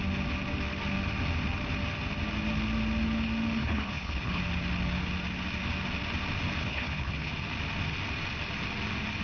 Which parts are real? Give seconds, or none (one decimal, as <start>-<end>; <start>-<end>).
0.0-3.6; 4.4-6.6; 7.3-9.2